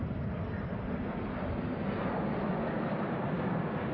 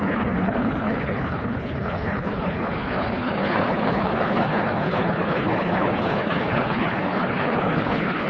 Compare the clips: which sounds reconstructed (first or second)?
second